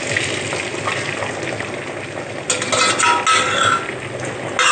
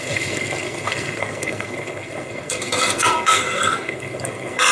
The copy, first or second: second